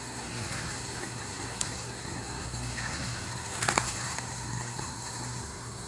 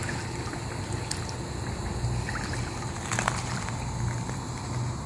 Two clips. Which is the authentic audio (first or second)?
second